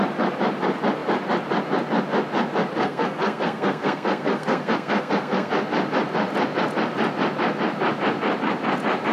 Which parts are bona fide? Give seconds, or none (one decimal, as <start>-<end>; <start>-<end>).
0.0-2.8; 5.5-9.1